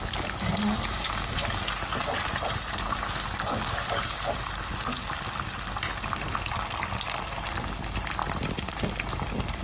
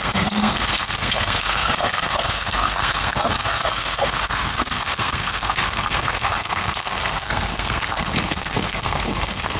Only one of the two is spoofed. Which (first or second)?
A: second